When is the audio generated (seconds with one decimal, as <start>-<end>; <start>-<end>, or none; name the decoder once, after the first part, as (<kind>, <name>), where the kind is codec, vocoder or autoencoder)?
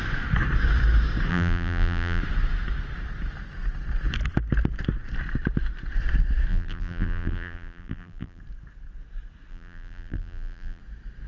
1.3-2.2 (vocoder, BigVGAN v2); 6.5-8.4; 9.5-10.8